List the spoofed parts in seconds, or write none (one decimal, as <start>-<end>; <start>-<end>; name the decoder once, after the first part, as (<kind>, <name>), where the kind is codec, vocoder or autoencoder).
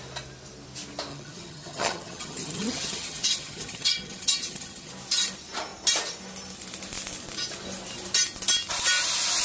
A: 1.1-4.9 (vocoder, HiFi-GAN)